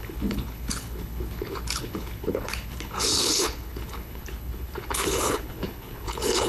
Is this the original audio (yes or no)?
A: no